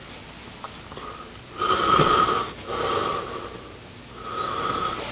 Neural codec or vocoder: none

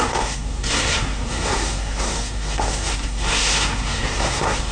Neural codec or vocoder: codec, SNAC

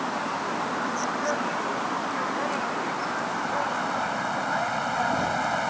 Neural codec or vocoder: none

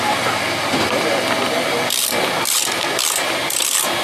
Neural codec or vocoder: vocoder, BigVGAN v2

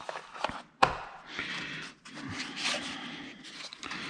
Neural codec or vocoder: none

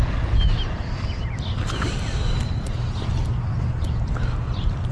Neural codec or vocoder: none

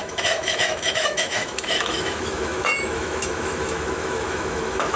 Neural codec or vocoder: autoencoder, DAC-VAE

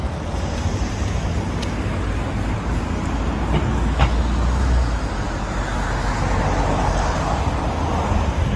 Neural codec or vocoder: none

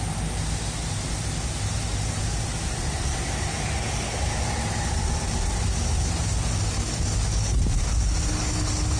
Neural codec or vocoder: none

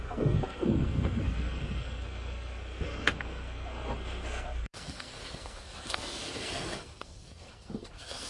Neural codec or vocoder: codec, SNAC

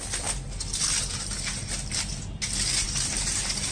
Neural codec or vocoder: none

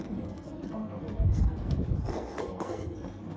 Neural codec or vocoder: codec, SNAC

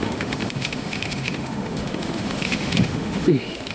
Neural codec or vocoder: autoencoder, DAC-VAE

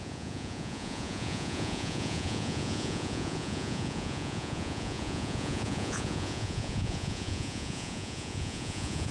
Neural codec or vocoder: vocoder, Vocos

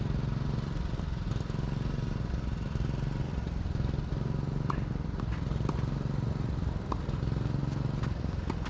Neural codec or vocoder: none